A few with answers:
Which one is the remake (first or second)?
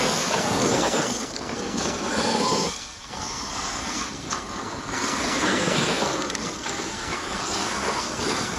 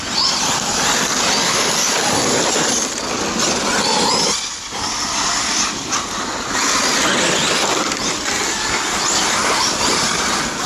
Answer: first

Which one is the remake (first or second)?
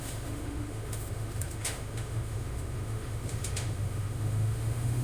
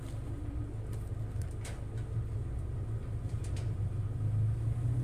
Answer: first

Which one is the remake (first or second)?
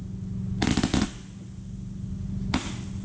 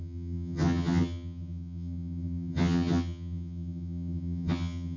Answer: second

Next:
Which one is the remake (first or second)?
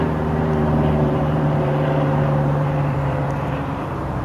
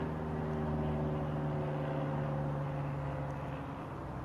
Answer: first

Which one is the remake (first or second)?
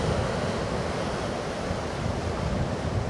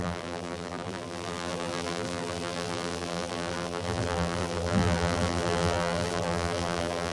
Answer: second